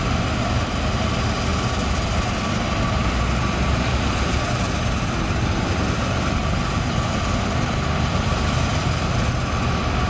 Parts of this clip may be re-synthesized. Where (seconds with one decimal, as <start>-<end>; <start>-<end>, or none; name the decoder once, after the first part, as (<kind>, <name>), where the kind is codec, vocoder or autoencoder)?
none